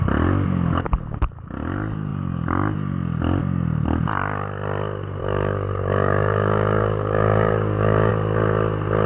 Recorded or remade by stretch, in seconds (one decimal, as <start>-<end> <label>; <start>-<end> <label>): 0.0-5.2 recorded; 5.2-8.1 remade; 8.1-9.1 recorded